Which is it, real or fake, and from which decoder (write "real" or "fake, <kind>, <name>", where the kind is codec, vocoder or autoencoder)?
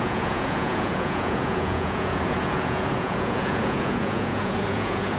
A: fake, vocoder, Vocos